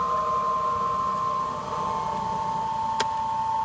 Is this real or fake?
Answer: real